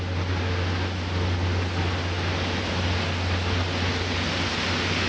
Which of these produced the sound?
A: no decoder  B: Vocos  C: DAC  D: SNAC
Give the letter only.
A